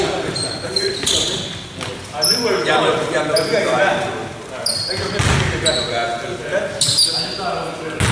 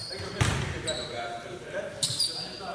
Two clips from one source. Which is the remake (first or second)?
second